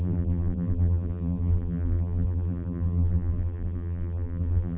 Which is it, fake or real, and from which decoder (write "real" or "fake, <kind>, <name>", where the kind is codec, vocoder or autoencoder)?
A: fake, vocoder, BigVGAN v2